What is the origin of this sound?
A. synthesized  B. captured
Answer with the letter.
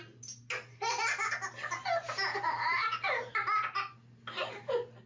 B